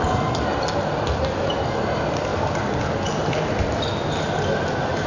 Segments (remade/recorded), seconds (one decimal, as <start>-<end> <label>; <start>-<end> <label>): 0.0-5.1 recorded